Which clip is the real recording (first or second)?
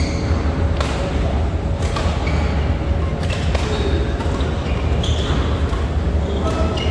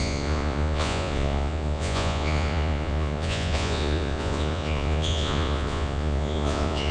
first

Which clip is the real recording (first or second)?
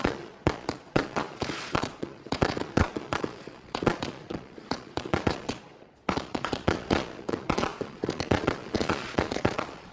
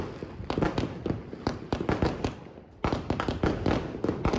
second